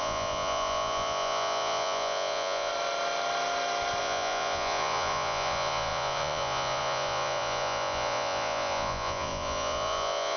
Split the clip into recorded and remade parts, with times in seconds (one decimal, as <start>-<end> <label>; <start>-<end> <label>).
0.0-2.7 remade; 2.7-4.0 recorded; 4.0-10.4 remade